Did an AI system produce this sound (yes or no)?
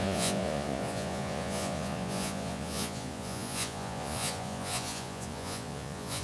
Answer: yes